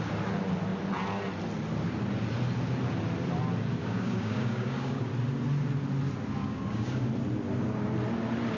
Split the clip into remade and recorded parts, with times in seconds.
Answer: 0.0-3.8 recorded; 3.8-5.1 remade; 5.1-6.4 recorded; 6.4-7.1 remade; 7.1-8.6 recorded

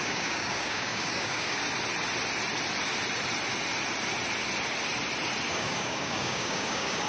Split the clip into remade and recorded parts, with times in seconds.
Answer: 0.0-1.6 remade; 1.6-5.5 recorded; 5.5-7.1 remade

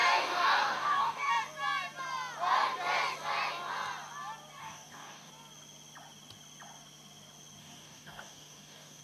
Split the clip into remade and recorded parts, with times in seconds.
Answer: 0.0-1.3 remade; 1.3-4.6 recorded; 4.6-5.3 remade; 5.3-7.6 recorded; 7.6-9.0 remade

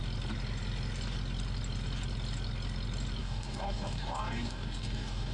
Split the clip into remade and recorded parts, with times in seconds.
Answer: 0.0-3.2 recorded; 3.2-5.3 remade

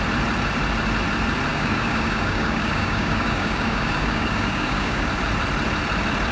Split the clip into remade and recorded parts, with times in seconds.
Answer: 0.0-1.5 recorded; 1.5-5.1 remade; 5.1-6.3 recorded

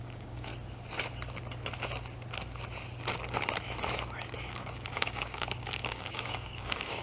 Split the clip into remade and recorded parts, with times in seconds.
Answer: 0.0-0.5 remade; 0.5-4.5 recorded; 4.5-7.0 remade

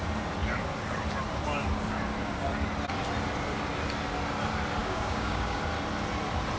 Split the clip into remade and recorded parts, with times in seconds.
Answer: 0.0-4.8 recorded; 4.8-5.6 remade; 5.6-6.6 recorded

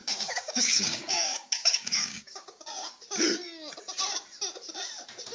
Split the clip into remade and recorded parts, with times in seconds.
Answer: 0.0-2.9 remade; 2.9-5.3 recorded